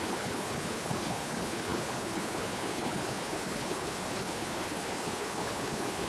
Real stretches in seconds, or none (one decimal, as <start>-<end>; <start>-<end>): none